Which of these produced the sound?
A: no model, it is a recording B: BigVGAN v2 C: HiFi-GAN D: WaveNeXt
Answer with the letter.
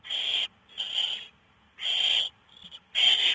A